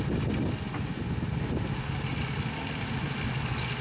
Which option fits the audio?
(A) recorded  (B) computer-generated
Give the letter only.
A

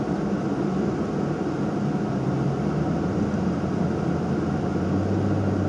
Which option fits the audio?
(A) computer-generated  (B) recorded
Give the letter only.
B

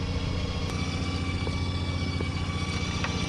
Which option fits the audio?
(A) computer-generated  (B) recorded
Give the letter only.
B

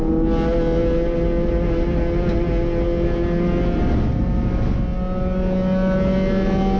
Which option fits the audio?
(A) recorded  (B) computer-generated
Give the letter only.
A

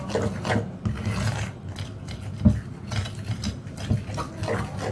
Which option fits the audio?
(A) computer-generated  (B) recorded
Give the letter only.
B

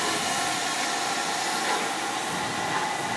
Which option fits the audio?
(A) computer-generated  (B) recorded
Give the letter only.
B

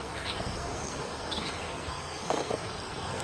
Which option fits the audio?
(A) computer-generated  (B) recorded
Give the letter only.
A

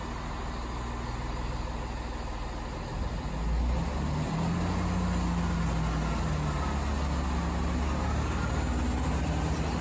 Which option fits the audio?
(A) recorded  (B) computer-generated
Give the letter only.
A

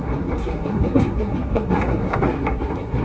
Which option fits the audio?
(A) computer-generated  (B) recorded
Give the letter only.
A